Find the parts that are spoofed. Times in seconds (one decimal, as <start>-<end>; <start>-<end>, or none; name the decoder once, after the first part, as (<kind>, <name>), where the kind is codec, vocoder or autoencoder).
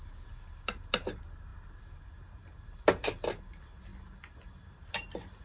none